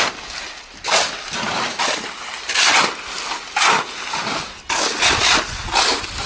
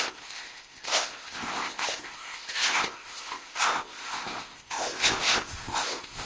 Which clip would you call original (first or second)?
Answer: first